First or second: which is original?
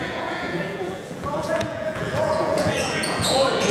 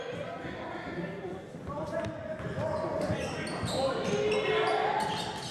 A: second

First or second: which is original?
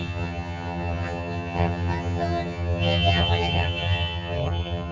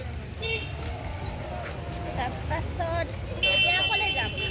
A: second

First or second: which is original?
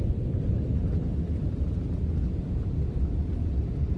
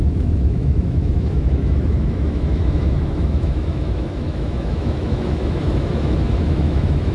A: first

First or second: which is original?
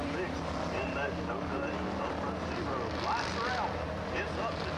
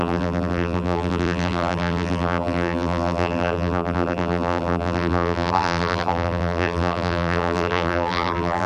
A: first